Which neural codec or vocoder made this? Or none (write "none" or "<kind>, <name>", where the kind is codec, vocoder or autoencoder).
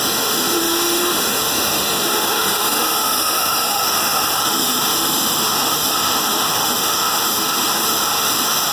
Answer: autoencoder, DAC-VAE